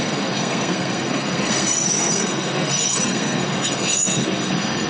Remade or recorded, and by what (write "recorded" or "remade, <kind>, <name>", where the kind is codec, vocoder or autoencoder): remade, codec, SNAC